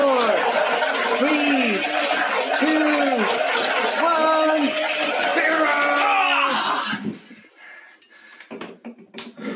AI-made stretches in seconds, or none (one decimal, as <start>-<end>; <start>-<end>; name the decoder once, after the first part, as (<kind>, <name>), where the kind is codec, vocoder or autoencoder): none